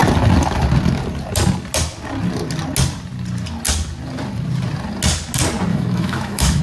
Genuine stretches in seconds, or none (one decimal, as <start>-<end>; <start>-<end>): 0.0-5.7